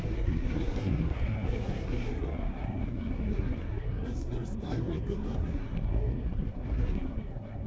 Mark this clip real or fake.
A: fake